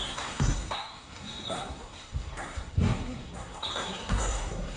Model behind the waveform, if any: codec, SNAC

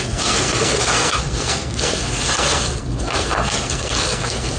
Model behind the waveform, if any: codec, SNAC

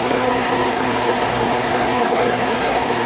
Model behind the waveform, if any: codec, SNAC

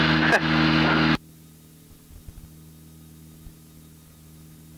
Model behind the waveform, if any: none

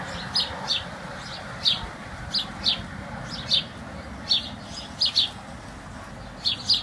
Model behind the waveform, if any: none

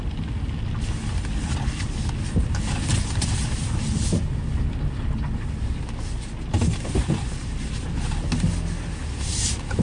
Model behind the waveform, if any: none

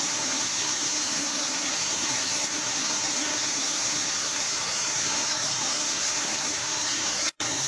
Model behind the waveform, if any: codec, SNAC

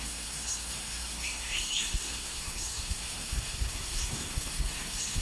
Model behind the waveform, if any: codec, SNAC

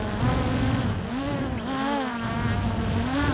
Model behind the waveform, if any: none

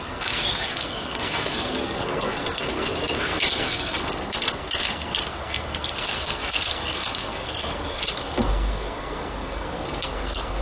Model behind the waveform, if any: codec, SNAC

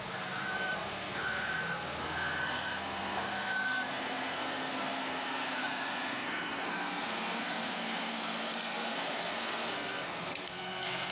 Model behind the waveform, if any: codec, SNAC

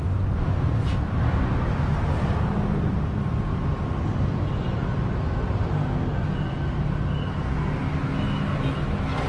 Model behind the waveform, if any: none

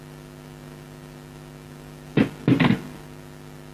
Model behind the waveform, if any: none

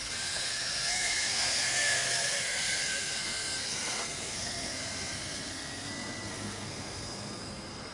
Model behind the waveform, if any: codec, SNAC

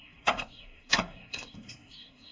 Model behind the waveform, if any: codec, SNAC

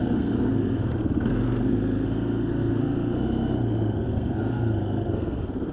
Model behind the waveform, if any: codec, SNAC